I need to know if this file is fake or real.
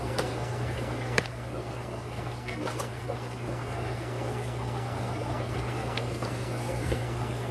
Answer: fake